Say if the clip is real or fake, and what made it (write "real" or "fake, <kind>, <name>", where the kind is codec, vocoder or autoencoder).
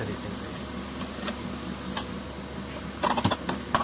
real